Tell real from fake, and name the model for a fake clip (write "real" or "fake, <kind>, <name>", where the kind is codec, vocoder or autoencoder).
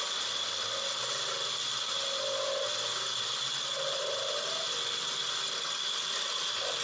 real